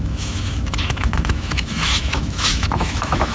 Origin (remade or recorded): remade